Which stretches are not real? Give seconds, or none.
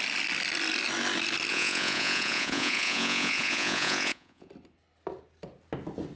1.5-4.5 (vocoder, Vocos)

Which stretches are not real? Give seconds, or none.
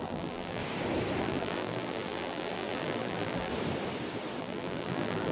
0.0-0.6 (vocoder, BigVGAN v2); 1.2-3.5; 4.4-5.3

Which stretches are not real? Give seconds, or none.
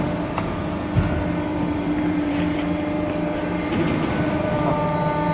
1.5-4.7 (vocoder, BigVGAN v2)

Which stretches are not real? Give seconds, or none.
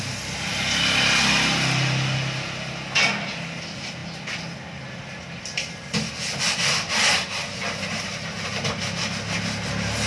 none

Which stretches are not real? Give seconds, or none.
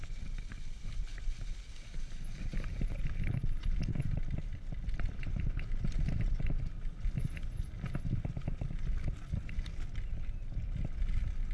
none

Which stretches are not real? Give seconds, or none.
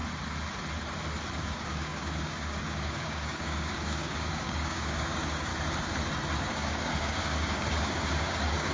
1.4-5.5 (codec, DAC); 6.4-8.7